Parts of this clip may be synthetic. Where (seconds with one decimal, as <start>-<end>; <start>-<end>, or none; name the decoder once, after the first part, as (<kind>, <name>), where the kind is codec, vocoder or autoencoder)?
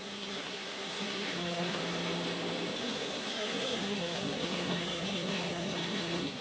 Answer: 0.0-1.8 (codec, SNAC); 2.8-6.4